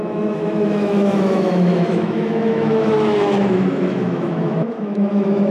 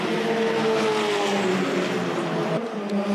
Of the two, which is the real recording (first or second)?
second